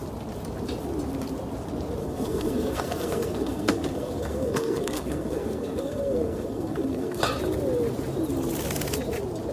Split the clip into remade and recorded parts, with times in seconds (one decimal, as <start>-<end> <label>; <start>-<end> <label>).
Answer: 0.0-2.0 recorded; 2.0-7.2 remade; 7.2-9.5 recorded